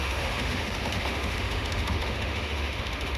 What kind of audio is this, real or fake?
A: fake